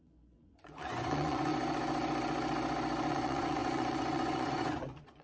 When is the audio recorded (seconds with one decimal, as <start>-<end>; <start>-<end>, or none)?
1.5-3.1